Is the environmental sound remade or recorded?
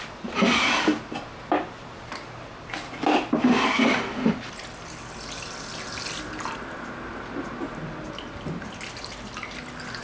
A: recorded